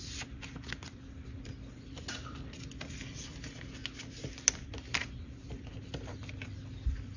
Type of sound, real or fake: real